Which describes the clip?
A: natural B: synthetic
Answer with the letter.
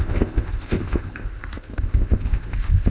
B